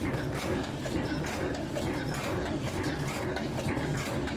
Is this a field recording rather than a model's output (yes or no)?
no